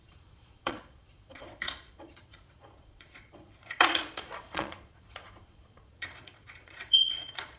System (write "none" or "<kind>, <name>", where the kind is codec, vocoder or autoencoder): vocoder, Vocos